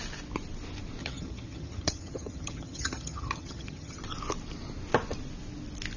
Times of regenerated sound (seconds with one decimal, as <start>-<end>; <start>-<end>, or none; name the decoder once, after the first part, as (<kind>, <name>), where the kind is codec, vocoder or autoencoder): 1.0-4.0 (vocoder, HiFi-GAN)